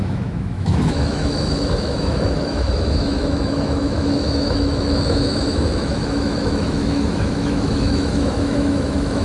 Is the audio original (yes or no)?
no